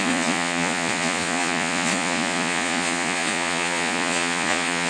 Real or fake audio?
fake